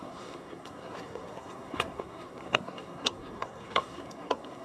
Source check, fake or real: fake